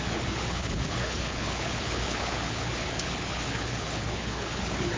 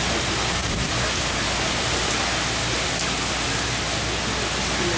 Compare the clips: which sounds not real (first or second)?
first